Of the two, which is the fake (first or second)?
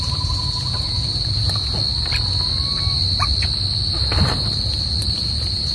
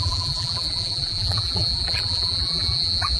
second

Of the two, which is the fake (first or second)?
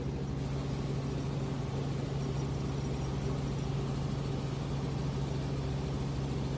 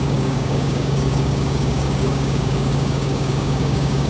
second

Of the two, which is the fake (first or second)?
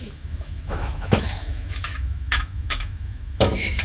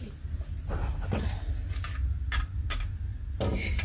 first